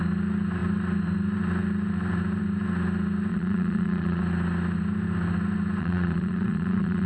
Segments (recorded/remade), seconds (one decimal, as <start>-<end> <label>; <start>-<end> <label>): 0.0-3.3 recorded; 3.3-4.2 remade; 4.2-5.8 recorded; 5.8-7.1 remade